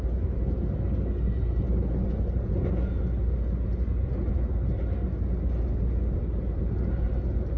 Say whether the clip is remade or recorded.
recorded